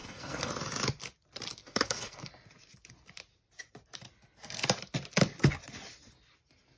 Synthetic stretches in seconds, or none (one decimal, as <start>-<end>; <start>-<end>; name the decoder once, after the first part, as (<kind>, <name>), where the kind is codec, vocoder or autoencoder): 0.0-0.5 (codec, SNAC); 1.6-2.3